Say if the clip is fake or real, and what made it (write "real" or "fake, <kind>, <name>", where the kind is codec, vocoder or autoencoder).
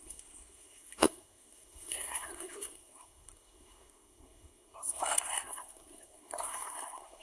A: fake, codec, SNAC